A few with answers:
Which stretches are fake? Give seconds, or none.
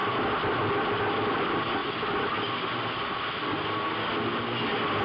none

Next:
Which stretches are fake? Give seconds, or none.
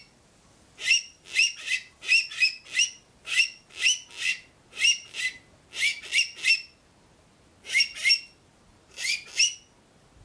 none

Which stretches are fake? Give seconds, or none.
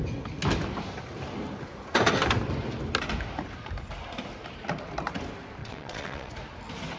5.6-6.3 (vocoder, WaveNeXt)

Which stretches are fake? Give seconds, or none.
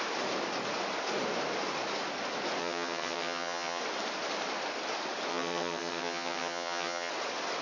2.6-3.8 (vocoder, HiFi-GAN); 5.3-7.1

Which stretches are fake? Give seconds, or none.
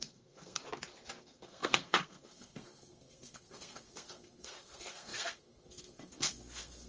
0.0-0.6 (codec, SNAC); 1.2-6.9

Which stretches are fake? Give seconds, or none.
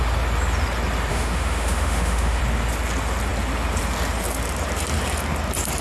1.1-2.4 (autoencoder, DAC-VAE)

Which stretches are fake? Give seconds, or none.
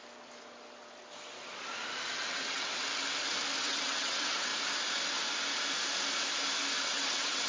2.2-2.8 (vocoder, WaveNeXt); 3.6-4.5; 6.8-7.5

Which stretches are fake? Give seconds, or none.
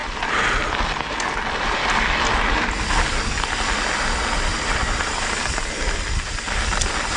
4.5-5.4 (vocoder, BigVGAN v2)